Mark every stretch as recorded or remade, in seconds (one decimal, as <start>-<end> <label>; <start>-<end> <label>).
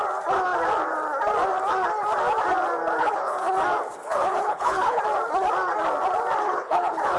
0.0-3.0 recorded; 3.0-3.5 remade; 3.5-4.0 recorded; 4.0-5.0 remade; 5.0-6.4 recorded; 6.4-7.2 remade